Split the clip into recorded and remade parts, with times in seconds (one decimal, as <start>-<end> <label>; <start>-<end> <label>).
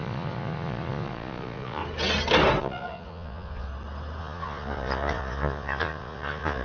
0.0-1.8 remade; 1.8-2.6 recorded; 2.6-3.7 remade; 3.7-4.2 recorded; 4.2-6.6 remade